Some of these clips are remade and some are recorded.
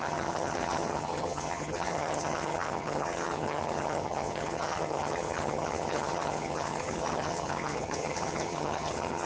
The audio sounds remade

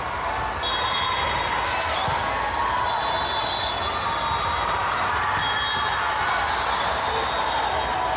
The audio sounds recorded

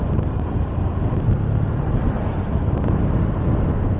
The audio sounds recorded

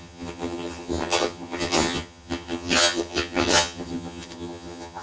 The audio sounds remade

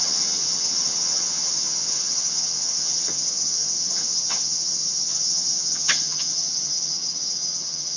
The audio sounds remade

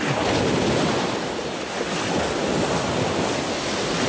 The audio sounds recorded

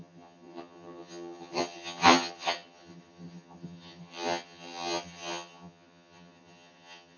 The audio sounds remade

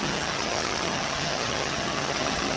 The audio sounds remade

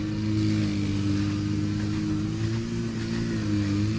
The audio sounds recorded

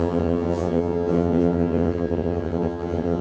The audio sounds remade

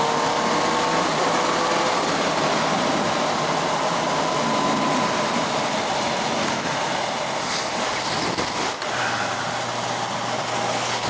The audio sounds recorded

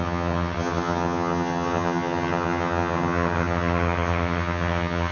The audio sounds remade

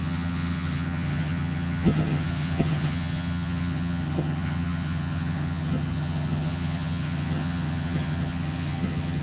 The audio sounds remade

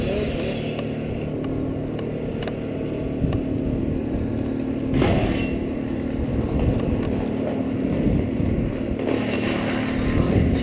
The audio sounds recorded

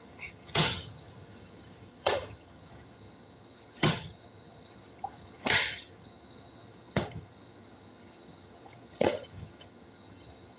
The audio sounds remade